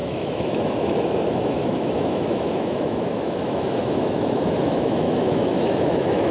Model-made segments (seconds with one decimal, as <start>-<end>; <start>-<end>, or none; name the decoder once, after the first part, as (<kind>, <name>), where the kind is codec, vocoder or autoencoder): 0.0-6.3 (autoencoder, DAC-VAE)